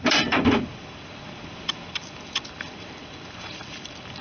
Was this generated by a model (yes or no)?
yes